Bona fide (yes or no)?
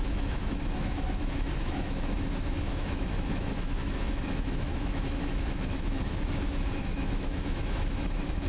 no